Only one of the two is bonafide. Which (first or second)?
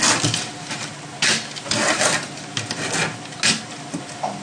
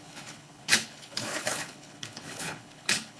first